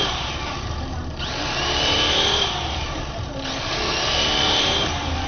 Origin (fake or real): fake